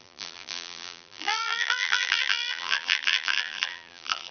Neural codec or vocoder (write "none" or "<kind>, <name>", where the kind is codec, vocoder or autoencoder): vocoder, BigVGAN v2